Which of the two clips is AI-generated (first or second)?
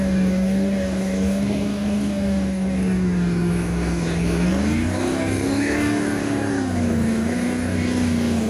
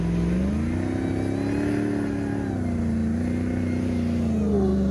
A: first